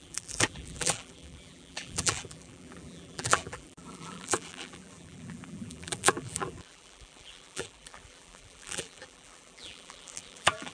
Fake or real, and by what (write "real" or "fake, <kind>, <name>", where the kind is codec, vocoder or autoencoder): fake, vocoder, BigVGAN v2